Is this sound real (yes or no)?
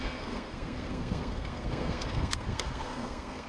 no